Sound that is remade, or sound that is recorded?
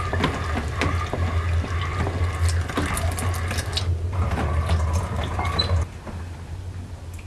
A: recorded